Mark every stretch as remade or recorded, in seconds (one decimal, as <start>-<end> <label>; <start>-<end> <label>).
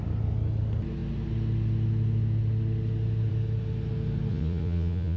0.0-4.3 recorded; 4.3-5.2 remade